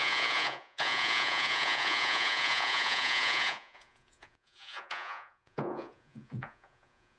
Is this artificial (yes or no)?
yes